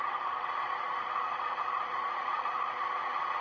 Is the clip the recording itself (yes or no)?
no